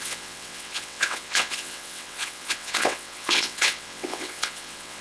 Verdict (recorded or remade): remade